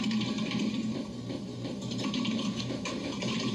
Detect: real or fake fake